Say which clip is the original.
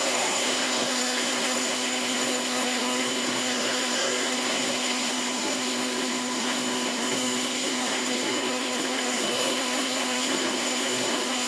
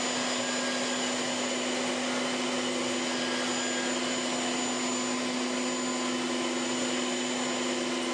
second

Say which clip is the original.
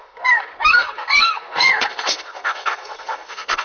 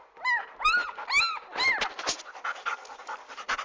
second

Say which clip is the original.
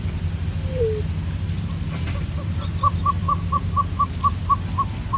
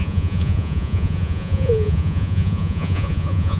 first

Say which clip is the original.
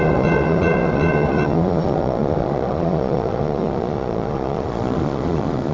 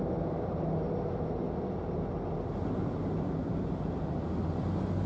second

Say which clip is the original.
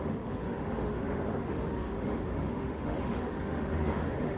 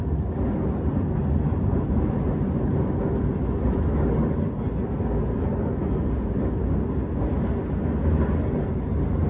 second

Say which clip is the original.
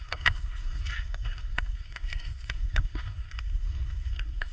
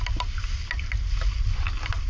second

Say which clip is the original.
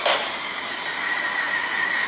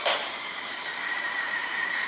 first